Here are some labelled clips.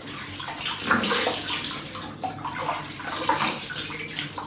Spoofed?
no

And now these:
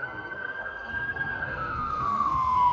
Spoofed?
yes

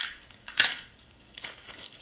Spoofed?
yes